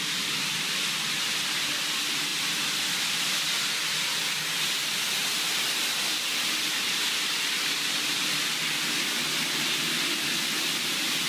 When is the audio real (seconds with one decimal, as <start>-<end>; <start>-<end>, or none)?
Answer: 0.0-11.3